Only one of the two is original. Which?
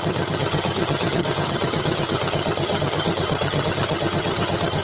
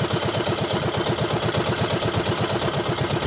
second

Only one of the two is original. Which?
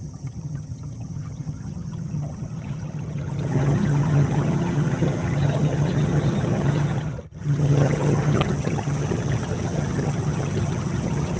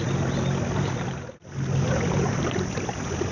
second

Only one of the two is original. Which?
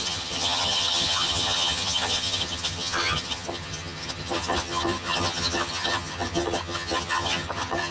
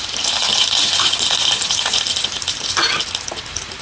second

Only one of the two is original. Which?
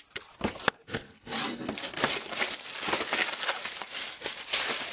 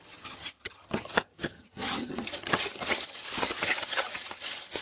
first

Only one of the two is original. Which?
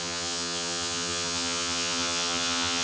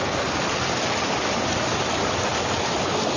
second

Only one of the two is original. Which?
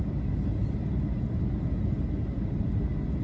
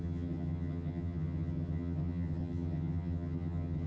first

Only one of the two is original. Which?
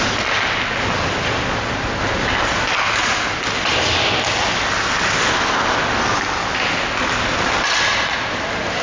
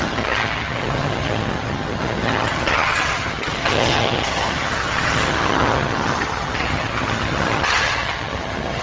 first